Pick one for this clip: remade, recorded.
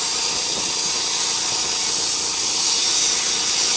recorded